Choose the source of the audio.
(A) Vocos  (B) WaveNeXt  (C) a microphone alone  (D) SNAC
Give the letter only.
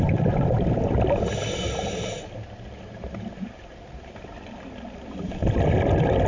C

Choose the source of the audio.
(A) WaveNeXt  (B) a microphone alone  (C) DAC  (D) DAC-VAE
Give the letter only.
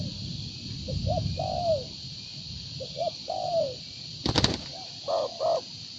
B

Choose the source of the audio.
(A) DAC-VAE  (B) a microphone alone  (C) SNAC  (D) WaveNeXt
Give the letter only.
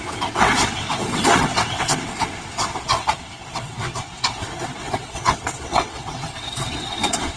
D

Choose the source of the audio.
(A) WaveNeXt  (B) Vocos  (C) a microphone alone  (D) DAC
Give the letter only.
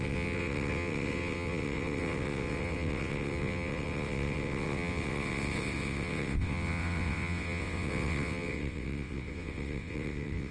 A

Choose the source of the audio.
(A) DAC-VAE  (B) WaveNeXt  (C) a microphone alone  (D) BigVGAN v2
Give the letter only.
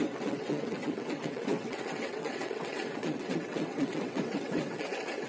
B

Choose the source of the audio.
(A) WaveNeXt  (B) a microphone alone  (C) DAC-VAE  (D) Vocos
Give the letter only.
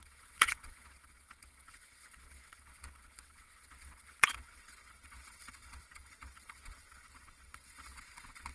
A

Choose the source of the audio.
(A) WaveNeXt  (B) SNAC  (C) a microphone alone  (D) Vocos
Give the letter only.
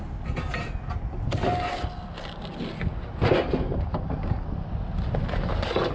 C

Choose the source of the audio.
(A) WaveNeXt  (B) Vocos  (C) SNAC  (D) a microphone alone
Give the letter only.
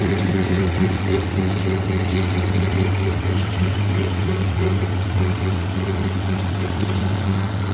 A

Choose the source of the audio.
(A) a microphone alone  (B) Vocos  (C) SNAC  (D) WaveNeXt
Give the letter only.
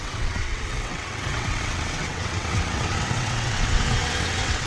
D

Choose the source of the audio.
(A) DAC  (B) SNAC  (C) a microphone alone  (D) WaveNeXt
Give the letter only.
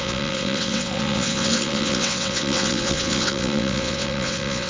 D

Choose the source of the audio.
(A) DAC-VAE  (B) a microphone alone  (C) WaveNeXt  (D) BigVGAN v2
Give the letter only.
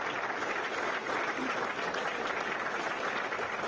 B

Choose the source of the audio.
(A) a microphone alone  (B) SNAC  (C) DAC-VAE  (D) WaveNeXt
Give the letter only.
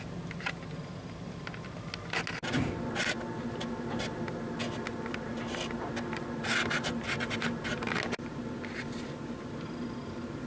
A